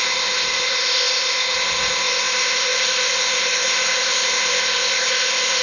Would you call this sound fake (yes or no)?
yes